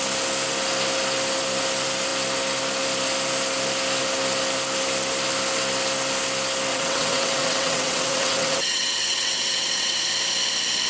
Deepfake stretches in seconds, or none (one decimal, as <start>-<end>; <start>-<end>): 6.7-10.0